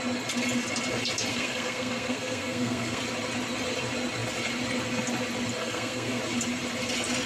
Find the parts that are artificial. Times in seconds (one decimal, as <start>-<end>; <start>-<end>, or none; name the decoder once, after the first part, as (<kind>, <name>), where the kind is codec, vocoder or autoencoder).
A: 1.3-3.0 (codec, SNAC); 5.6-6.2